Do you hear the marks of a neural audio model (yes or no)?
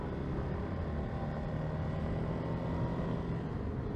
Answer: no